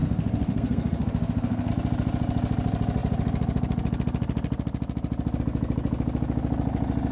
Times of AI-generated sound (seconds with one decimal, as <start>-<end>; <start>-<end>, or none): 0.0-1.7